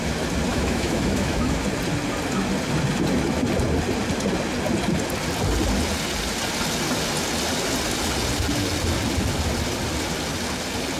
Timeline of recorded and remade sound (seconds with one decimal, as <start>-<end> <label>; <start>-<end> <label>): 0.0-0.5 recorded; 0.5-1.6 remade; 1.6-11.0 recorded